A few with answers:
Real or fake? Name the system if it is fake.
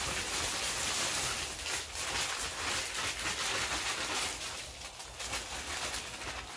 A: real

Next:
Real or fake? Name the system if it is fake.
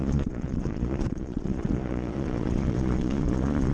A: fake, vocoder, Vocos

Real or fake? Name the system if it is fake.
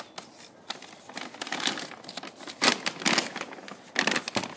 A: real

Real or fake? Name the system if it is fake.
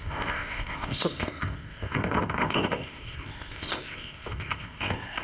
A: fake, codec, ZipCodec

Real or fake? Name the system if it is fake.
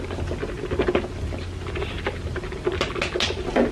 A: real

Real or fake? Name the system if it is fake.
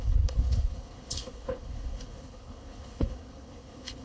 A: fake, codec, HILCodec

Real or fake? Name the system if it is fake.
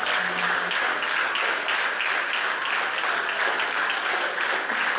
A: real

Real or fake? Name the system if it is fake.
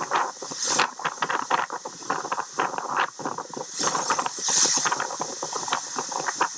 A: fake, vocoder, BigVGAN v2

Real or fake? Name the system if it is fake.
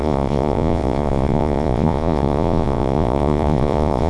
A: fake, vocoder, Vocos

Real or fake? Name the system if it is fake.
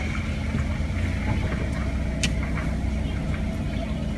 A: real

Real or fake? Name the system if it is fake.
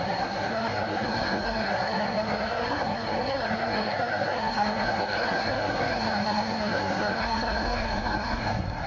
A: fake, codec, SNAC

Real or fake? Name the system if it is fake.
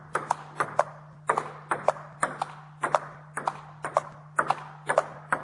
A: real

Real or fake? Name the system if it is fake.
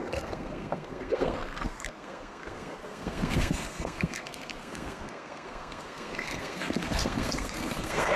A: fake, codec, SNAC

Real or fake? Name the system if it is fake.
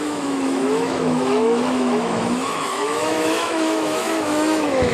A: fake, autoencoder, DAC-VAE